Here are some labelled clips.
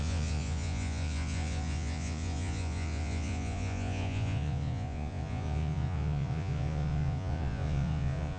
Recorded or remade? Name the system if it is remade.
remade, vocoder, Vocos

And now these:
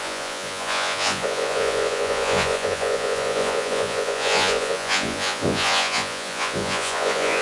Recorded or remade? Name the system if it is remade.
remade, vocoder, Vocos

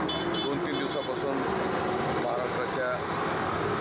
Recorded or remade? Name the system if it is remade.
recorded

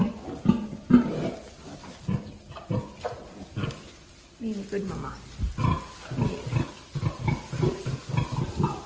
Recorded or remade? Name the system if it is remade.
recorded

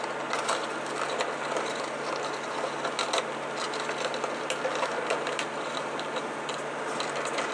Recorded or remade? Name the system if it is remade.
recorded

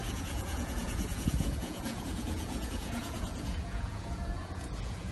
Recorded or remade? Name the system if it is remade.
remade, vocoder, Vocos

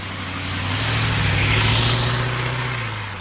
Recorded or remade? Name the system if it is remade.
recorded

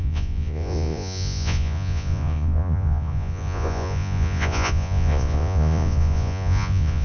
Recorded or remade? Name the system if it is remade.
remade, vocoder, Vocos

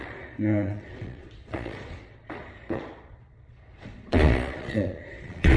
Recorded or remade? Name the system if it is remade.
remade, vocoder, Vocos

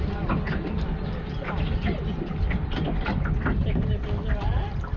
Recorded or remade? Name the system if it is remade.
recorded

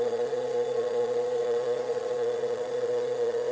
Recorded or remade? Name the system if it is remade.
remade, vocoder, Vocos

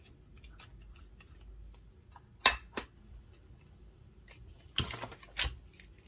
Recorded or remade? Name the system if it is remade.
recorded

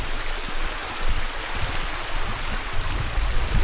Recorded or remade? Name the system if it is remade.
recorded